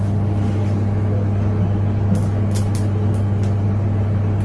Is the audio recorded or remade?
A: recorded